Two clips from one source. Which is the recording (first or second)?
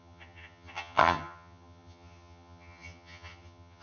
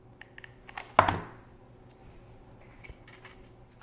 second